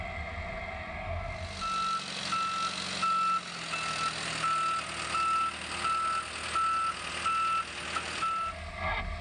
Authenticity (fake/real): real